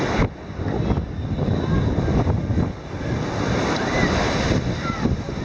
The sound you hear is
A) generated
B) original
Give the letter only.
B